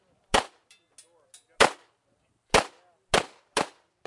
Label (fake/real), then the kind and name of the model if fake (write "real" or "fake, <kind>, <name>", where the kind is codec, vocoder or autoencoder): real